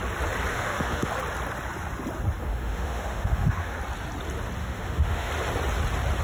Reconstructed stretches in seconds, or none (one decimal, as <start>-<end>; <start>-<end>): 0.5-1.1; 2.4-3.8; 4.6-5.3